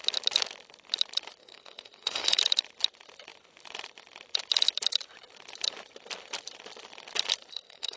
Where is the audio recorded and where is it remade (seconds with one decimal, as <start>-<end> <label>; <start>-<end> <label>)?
0.0-1.4 recorded; 1.4-2.4 remade; 2.4-7.5 recorded; 7.5-8.0 remade